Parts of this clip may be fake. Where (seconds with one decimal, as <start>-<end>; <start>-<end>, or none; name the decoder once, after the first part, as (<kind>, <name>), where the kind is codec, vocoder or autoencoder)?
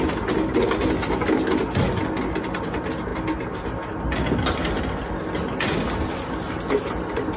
none